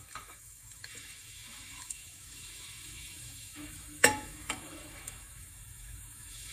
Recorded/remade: remade